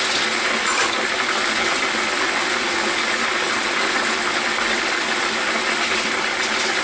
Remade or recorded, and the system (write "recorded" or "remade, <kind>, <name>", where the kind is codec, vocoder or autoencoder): recorded